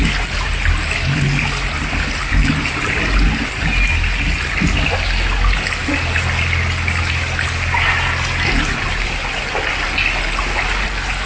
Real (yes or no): yes